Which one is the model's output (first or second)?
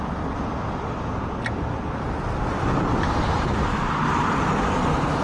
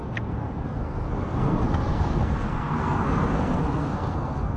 second